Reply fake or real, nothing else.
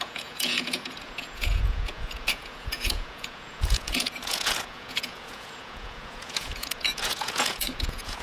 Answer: fake